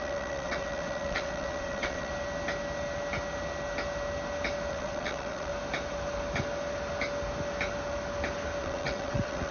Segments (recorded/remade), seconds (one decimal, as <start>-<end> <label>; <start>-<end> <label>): 0.0-2.1 remade; 2.1-4.7 recorded; 4.7-5.5 remade; 5.5-8.6 recorded; 8.6-9.5 remade